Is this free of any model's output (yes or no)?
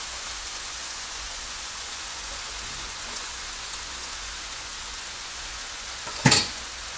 no